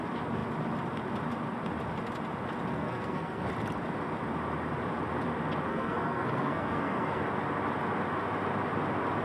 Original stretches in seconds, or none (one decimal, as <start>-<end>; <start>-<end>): 0.0-2.7; 3.5-5.7; 7.2-9.2